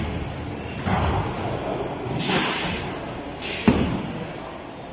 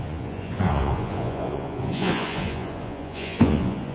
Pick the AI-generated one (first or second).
second